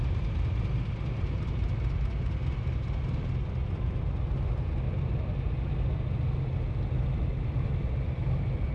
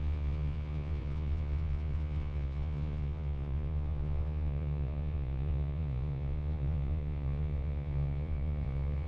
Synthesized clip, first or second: second